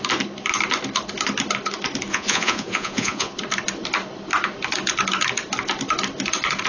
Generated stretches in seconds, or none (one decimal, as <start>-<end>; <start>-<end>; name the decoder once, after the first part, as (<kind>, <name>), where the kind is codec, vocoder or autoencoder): 2.1-3.3 (vocoder, Vocos)